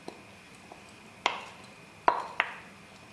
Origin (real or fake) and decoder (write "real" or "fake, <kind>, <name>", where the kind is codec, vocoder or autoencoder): real